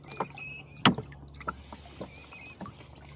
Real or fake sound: real